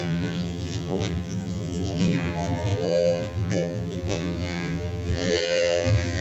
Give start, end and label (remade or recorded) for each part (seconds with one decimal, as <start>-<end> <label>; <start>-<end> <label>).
0.0-6.2 remade